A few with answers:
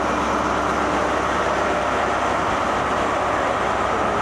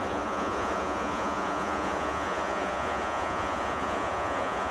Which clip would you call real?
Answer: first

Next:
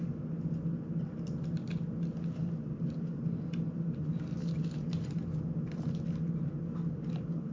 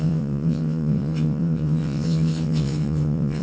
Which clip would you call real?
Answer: first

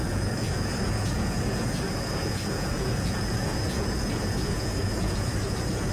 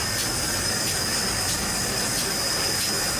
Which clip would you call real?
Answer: second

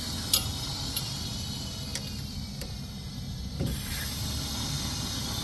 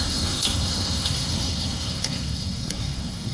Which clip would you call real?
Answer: first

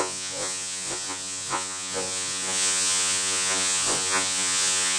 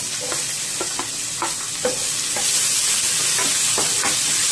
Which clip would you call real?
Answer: second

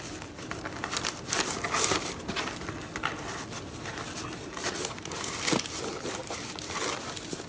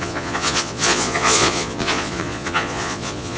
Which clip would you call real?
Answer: first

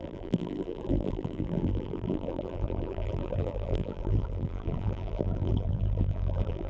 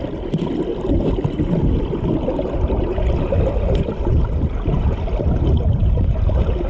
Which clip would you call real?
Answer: second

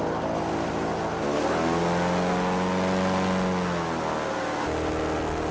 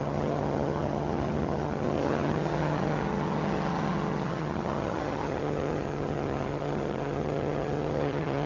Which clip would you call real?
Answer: first